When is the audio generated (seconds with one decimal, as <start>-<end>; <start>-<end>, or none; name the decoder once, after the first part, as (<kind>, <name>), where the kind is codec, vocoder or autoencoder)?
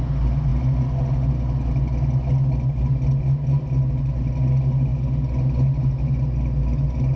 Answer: none